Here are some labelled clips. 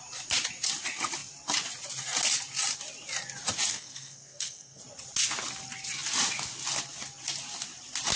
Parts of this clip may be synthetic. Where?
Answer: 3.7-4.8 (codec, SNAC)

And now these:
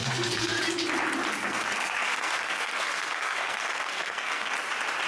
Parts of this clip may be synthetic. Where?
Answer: 0.0-0.6 (codec, SNAC); 1.4-4.5

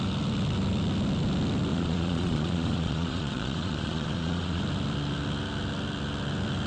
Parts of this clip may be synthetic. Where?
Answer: 1.7-4.6 (vocoder, Vocos)